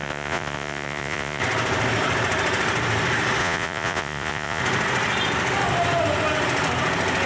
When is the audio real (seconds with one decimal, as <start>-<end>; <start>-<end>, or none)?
1.4-3.4; 4.6-7.3